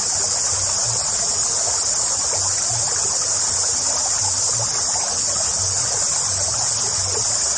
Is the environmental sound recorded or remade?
recorded